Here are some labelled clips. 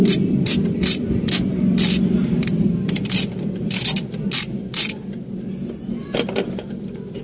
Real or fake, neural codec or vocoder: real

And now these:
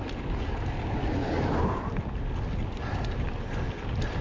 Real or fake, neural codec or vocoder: real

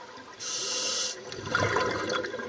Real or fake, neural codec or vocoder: real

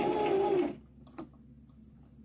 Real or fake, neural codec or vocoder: real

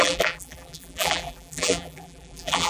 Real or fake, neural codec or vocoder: fake, vocoder, BigVGAN v2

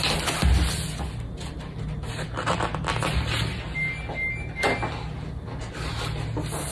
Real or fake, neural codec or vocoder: real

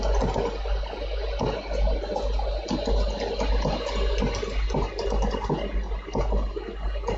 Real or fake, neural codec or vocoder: real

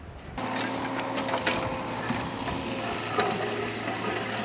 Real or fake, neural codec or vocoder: real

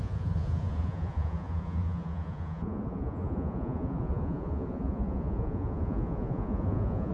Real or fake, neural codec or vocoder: fake, vocoder, Vocos